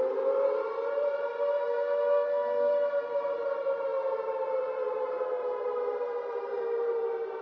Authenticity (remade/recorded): remade